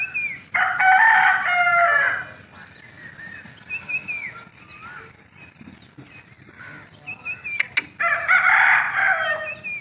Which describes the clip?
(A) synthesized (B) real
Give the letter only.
B